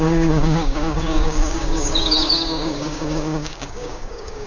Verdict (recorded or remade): remade